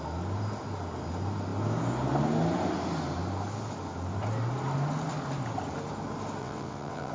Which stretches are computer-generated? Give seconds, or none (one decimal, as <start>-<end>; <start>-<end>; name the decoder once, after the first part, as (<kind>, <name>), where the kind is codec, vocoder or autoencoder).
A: 6.4-7.1 (vocoder, WaveNeXt)